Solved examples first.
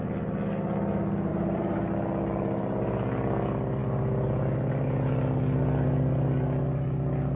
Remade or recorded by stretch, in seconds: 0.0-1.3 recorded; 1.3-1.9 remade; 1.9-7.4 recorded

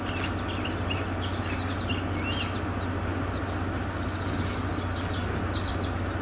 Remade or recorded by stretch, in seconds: 0.0-6.2 recorded

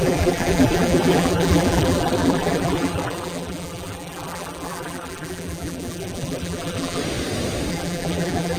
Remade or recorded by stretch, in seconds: 0.0-7.0 remade; 7.0-7.7 recorded; 7.7-8.6 remade

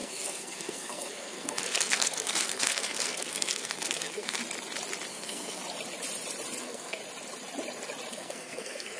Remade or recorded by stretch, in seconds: 0.0-4.4 remade; 4.4-5.1 recorded; 5.1-5.6 remade; 5.6-6.6 recorded; 6.6-7.0 remade; 7.0-8.1 recorded; 8.1-9.0 remade

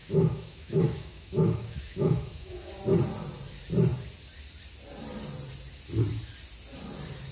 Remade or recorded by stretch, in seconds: 0.0-2.7 remade; 2.7-7.3 recorded